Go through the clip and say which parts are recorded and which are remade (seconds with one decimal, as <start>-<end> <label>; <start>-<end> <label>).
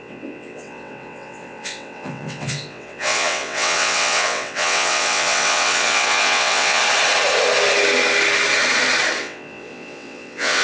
0.0-6.8 remade; 6.8-9.2 recorded; 9.2-10.6 remade